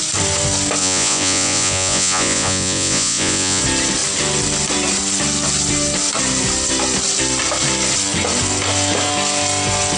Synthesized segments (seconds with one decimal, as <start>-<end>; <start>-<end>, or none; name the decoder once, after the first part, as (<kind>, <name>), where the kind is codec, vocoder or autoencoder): 0.8-3.6 (vocoder, Vocos)